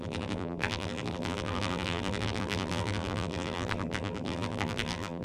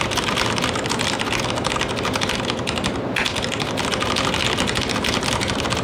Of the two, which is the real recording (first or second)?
second